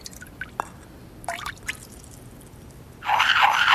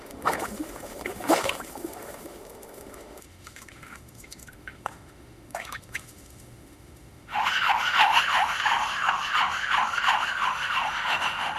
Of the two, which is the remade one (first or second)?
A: second